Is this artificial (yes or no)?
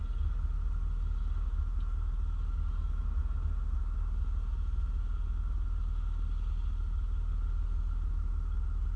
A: no